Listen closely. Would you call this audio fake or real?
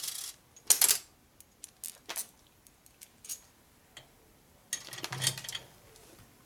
real